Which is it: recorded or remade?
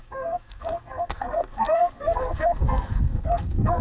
remade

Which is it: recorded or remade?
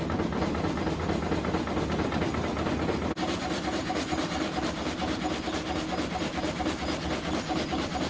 recorded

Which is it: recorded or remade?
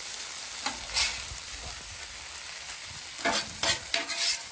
recorded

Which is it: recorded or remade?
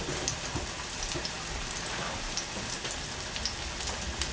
recorded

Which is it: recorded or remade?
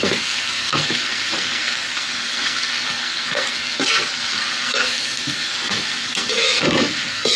remade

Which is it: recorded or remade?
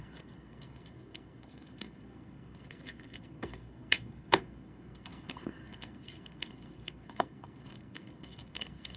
remade